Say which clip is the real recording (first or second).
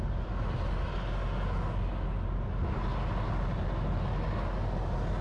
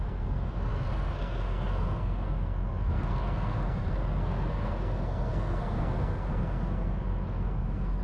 first